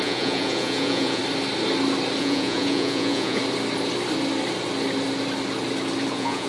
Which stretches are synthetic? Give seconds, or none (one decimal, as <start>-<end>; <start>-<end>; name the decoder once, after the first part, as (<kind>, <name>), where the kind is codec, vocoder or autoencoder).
0.0-1.2 (vocoder, Vocos); 2.2-3.4; 6.1-6.5